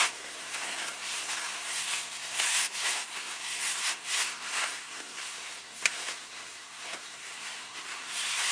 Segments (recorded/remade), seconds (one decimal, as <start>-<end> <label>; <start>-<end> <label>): 0.0-8.5 remade